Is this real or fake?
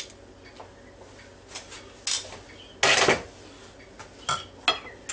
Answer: real